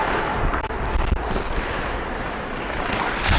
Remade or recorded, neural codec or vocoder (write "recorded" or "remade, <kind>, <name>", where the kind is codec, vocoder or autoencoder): recorded